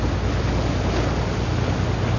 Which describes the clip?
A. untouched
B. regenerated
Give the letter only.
A